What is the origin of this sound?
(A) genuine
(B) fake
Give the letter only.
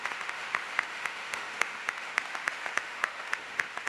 B